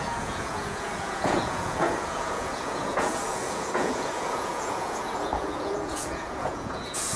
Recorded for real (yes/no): no